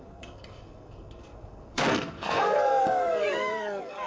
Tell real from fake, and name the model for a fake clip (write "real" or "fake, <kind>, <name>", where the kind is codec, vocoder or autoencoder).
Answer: fake, codec, SNAC